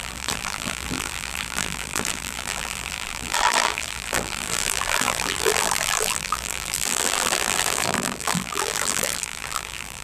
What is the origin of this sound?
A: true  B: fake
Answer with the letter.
B